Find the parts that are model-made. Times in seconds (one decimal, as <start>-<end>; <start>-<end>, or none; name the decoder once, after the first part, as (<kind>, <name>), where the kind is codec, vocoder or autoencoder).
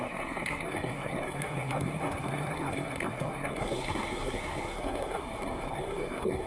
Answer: 0.0-6.5 (codec, SNAC)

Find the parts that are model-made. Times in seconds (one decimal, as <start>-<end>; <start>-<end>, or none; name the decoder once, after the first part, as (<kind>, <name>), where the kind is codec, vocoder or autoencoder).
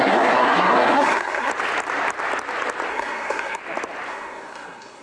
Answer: 0.0-1.5 (codec, SNAC); 2.9-3.6; 4.1-5.0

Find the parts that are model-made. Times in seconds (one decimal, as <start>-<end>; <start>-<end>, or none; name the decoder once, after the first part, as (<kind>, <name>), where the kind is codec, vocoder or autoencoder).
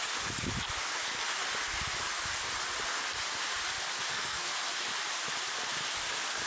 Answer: 4.1-4.6 (codec, SNAC)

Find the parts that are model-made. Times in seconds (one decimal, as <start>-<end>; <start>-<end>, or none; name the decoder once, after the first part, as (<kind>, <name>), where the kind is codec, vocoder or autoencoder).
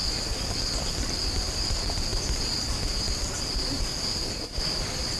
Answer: none